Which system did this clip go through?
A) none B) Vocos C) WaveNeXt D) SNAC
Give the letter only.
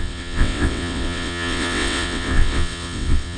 C